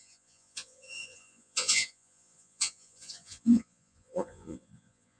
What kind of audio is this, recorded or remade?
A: remade